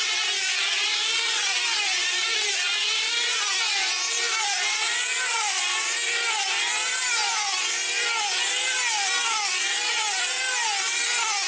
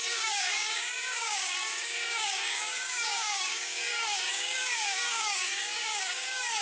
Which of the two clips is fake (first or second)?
second